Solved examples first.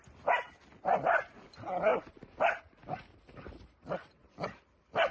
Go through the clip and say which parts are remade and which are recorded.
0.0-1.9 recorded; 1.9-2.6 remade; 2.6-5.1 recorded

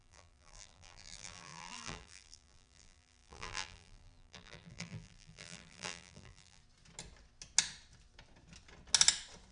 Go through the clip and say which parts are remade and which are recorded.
0.0-6.6 remade; 6.6-9.5 recorded

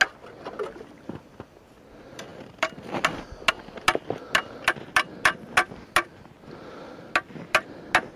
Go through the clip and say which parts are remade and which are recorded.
0.0-8.2 recorded

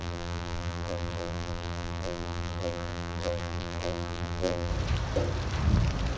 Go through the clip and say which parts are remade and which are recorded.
0.0-4.7 remade; 4.7-6.2 recorded

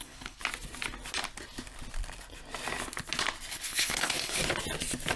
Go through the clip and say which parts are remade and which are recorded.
0.0-0.4 remade; 0.4-3.5 recorded; 3.5-4.4 remade; 4.4-5.2 recorded

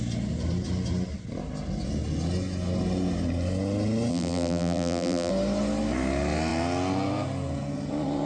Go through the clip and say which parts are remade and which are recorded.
0.0-4.1 recorded; 4.1-5.3 remade; 5.3-8.3 recorded

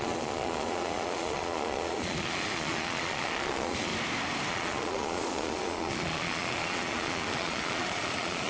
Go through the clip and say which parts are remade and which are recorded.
0.0-3.9 remade; 3.9-4.5 recorded; 4.5-8.5 remade

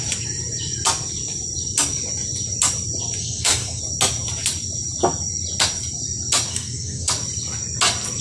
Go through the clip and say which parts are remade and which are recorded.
0.0-3.2 recorded; 3.2-3.8 remade; 3.8-6.5 recorded; 6.5-7.1 remade; 7.1-8.2 recorded